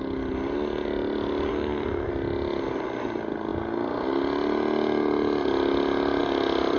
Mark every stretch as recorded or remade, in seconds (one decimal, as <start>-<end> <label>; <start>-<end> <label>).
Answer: 0.0-1.5 recorded; 1.5-2.1 remade; 2.1-6.8 recorded